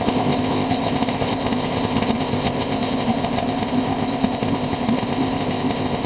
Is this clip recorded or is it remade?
remade